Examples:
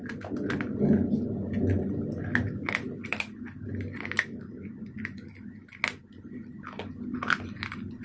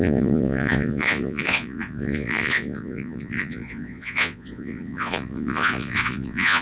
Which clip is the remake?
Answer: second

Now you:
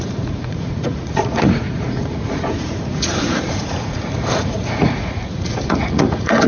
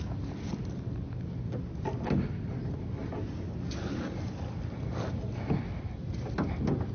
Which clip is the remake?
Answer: first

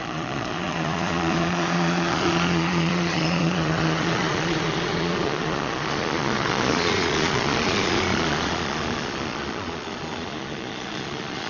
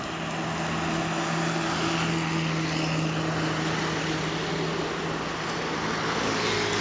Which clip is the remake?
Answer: first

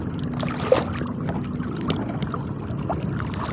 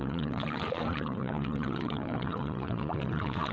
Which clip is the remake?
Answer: second